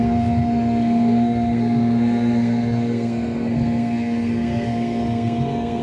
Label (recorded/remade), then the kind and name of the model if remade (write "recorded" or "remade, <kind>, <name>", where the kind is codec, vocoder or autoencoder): remade, codec, SNAC